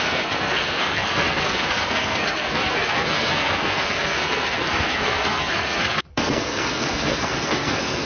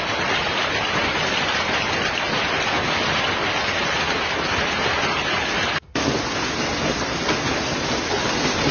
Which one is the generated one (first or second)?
first